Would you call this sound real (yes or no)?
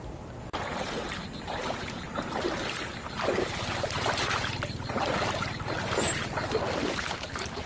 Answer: no